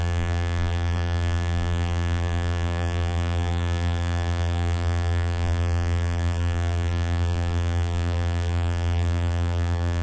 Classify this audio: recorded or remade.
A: remade